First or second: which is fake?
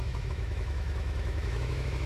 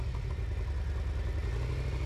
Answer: first